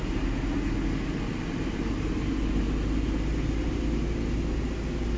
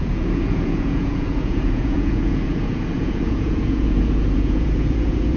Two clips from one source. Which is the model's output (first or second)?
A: second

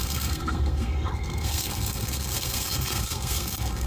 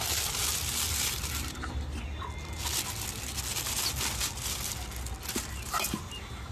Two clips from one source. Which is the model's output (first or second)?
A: first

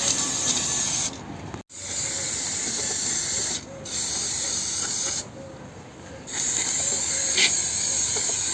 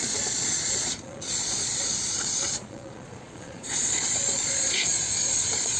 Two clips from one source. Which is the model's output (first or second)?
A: second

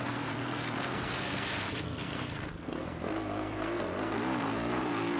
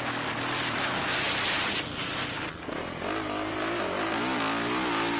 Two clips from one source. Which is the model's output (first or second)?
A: first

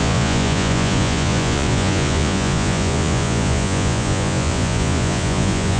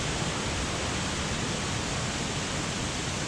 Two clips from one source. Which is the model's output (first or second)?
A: first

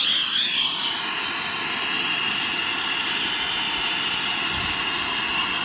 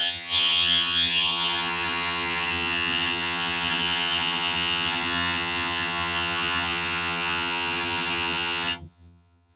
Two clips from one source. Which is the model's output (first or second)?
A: second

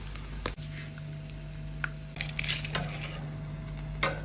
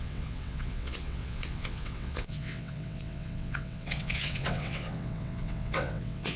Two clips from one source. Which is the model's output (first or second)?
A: second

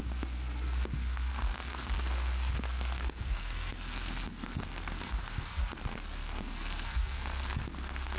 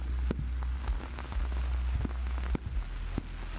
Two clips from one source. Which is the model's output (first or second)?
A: first